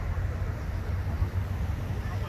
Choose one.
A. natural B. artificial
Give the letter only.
A